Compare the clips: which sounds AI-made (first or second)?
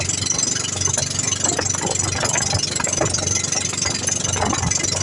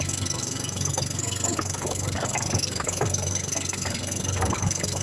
second